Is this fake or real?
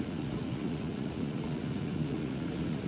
fake